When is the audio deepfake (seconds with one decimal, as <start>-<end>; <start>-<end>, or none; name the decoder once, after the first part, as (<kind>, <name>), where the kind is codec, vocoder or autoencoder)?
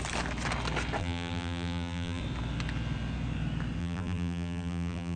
1.0-2.2 (vocoder, BigVGAN v2); 3.8-5.2